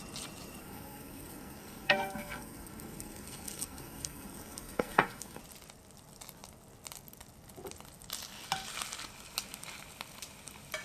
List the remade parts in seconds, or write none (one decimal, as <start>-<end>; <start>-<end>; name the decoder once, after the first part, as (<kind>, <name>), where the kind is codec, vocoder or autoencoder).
0.6-5.4 (codec, SNAC)